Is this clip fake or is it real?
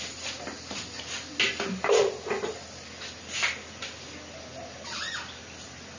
real